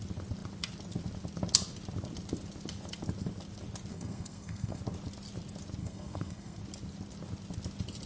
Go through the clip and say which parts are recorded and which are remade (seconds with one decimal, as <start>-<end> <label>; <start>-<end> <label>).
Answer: 0.0-3.9 recorded; 3.9-4.8 remade; 4.8-5.8 recorded; 5.8-6.6 remade; 6.6-8.1 recorded